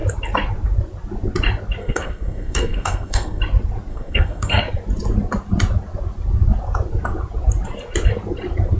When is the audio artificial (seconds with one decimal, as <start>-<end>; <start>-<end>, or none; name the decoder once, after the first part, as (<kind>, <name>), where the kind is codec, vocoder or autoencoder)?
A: 1.8-3.4 (codec, SNAC); 3.9-4.6